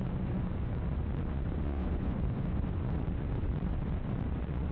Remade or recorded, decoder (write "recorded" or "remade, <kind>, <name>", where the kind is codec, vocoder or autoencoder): remade, vocoder, Vocos